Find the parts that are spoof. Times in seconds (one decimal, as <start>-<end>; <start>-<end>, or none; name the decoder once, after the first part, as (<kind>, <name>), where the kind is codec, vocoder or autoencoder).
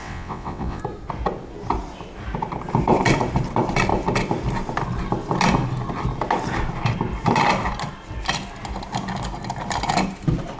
0.0-0.8 (vocoder, WaveNeXt)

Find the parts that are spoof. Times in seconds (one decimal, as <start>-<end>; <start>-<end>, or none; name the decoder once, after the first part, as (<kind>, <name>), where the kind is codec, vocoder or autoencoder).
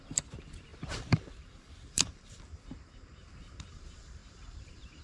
0.0-5.0 (vocoder, BigVGAN v2)